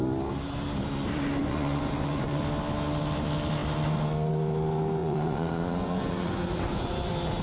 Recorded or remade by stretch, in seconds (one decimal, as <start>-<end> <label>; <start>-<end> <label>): 0.0-1.4 recorded; 1.4-2.4 remade; 2.4-5.0 recorded; 5.0-6.9 remade; 6.9-7.4 recorded